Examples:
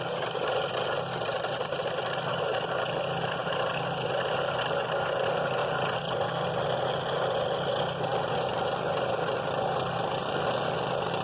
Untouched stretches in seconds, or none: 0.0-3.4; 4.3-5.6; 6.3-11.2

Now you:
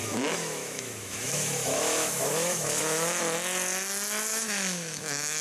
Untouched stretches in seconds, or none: 3.2-4.3

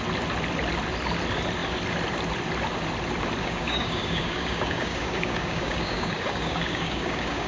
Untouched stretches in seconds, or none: 0.0-3.4

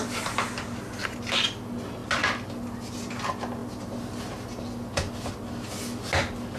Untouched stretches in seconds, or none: 0.0-6.6

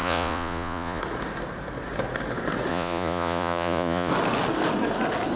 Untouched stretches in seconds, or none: 1.0-2.7; 4.1-5.4

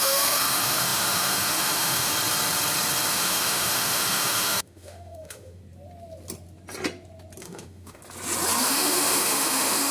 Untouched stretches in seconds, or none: 2.1-3.1; 5.6-7.4; 8.0-8.6

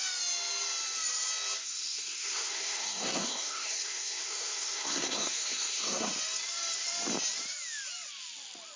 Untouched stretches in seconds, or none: 0.0-1.6; 6.1-8.8